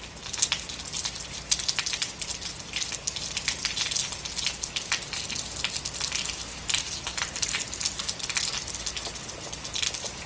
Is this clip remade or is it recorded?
recorded